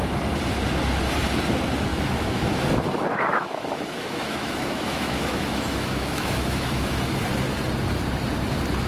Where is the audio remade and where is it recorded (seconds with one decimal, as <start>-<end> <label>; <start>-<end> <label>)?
0.0-1.9 recorded; 1.9-2.5 remade; 2.5-3.1 recorded; 3.1-7.1 remade; 7.1-8.9 recorded